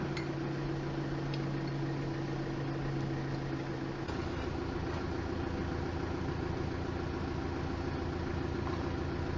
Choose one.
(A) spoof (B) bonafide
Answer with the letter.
B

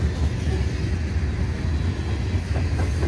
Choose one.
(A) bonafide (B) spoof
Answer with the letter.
A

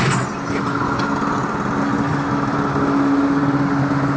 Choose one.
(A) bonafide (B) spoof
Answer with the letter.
A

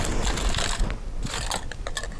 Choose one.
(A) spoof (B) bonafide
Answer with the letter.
B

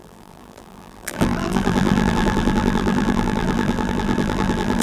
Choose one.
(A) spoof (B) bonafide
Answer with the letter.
A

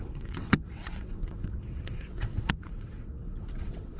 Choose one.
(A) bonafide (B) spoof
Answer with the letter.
B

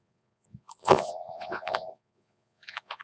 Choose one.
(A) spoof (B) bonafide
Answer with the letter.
A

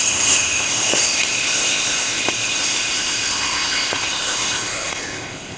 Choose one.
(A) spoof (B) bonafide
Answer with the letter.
A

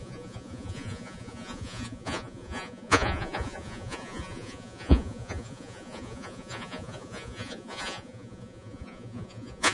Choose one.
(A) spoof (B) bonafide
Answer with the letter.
A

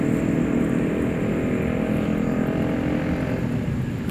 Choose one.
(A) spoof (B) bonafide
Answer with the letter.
B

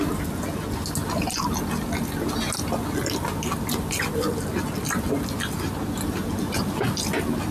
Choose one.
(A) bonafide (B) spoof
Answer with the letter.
A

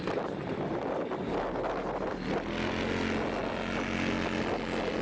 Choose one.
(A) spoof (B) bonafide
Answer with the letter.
B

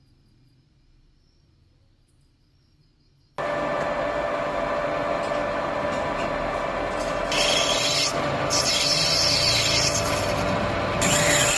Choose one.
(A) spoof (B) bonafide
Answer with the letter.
B